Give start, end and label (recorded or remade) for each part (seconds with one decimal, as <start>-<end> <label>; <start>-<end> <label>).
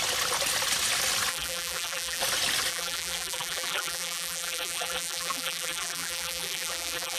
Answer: 0.0-1.3 recorded; 1.3-2.2 remade; 2.2-2.7 recorded; 2.7-7.2 remade